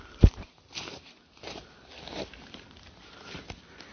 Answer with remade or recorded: recorded